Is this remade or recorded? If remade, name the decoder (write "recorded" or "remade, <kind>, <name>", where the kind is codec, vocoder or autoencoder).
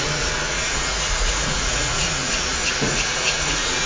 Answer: remade, vocoder, Vocos